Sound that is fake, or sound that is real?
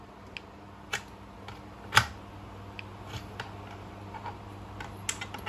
real